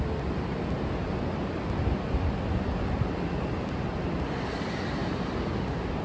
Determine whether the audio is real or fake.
real